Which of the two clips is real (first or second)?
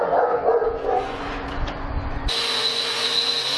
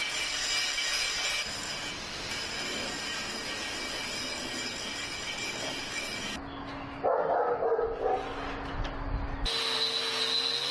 second